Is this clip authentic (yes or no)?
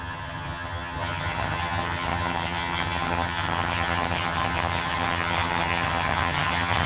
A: no